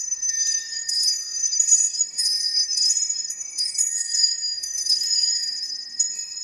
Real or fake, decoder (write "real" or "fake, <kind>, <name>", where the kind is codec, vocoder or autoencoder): fake, codec, SNAC